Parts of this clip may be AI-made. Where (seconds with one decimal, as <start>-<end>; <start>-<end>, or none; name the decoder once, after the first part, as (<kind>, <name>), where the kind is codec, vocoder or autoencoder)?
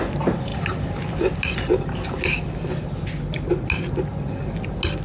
none